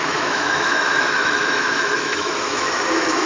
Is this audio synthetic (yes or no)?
yes